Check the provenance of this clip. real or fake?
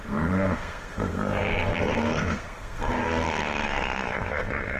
fake